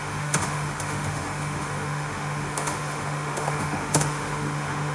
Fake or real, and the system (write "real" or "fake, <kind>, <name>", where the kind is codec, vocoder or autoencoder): fake, autoencoder, DAC-VAE